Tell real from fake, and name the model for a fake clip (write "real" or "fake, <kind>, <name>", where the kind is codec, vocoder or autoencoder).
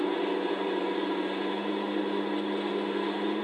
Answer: real